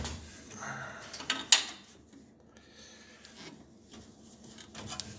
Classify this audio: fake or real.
real